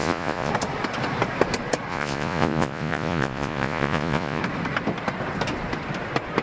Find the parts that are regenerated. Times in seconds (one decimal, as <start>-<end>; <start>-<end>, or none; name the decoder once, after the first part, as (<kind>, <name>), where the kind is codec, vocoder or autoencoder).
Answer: 0.0-0.5 (vocoder, Vocos); 1.9-4.4